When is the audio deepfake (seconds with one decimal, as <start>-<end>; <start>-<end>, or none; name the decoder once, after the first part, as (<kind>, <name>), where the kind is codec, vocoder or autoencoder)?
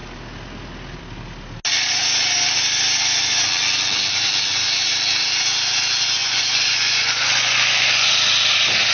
6.2-8.1 (vocoder, Vocos)